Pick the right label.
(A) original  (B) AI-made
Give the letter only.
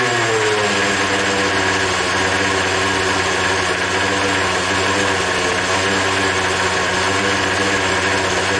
A